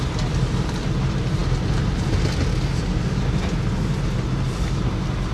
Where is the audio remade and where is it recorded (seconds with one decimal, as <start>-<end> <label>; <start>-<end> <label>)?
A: 0.0-1.4 remade; 1.4-4.6 recorded; 4.6-5.3 remade